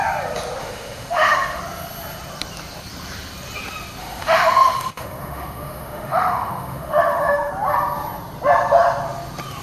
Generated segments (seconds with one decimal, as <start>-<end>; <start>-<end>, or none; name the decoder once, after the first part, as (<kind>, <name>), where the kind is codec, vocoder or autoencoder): 0.6-1.6 (autoencoder, DAC-VAE); 4.0-7.5